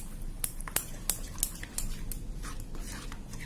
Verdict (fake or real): real